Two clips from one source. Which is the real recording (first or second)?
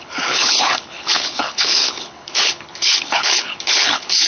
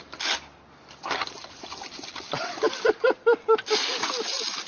second